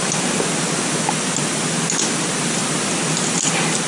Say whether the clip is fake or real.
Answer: real